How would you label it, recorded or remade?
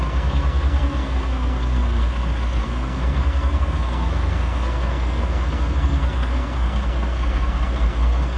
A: remade